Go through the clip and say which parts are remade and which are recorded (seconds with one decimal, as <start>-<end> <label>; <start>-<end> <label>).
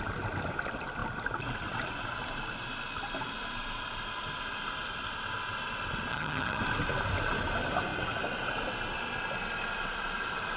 0.0-6.1 recorded; 6.1-6.6 remade; 6.6-10.6 recorded